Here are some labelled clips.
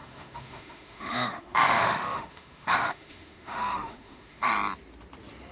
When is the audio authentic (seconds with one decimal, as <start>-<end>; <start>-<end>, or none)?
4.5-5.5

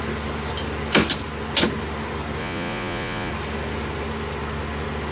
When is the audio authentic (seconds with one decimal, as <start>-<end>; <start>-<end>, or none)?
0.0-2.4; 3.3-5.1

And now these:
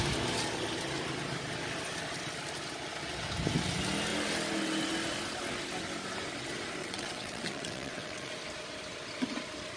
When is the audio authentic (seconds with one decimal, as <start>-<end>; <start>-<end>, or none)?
0.0-6.8; 8.3-9.8

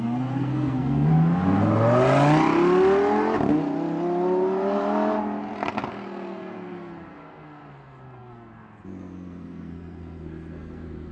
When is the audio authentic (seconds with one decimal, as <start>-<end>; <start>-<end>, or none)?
1.1-5.9